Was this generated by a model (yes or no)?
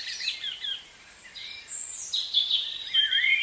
yes